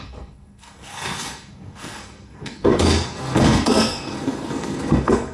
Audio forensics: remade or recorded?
remade